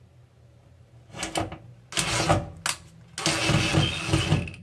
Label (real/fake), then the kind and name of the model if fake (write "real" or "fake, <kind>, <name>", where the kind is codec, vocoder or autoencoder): real